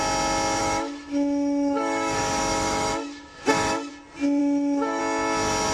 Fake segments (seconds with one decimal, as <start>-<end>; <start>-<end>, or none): 0.6-3.9; 4.4-5.0